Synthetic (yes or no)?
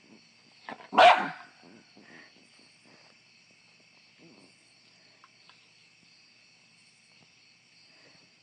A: no